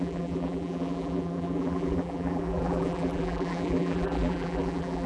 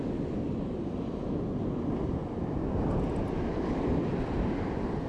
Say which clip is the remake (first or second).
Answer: first